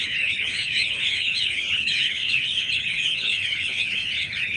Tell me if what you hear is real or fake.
fake